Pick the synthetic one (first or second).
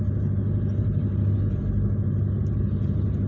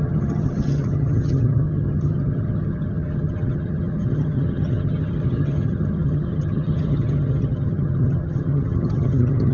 second